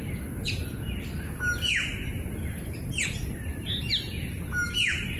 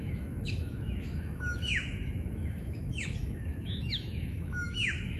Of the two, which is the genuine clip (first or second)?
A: first